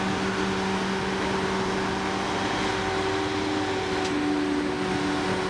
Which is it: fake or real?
real